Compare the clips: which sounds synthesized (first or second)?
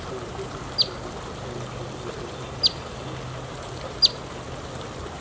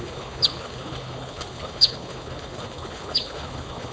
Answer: second